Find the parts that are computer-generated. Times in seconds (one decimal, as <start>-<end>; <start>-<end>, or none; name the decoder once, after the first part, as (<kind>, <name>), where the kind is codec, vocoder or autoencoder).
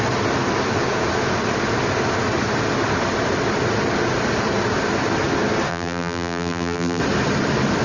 5.7-7.0 (vocoder, BigVGAN v2)